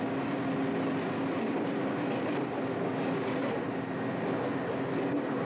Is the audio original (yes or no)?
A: yes